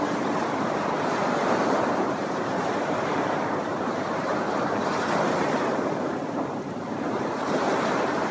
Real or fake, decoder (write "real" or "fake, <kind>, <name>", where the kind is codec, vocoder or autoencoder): fake, vocoder, BigVGAN v2